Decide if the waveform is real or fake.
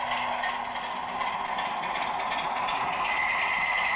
real